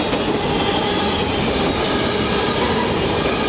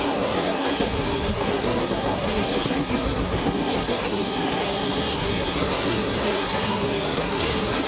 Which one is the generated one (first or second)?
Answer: second